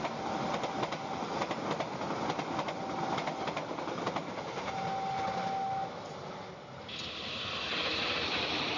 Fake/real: real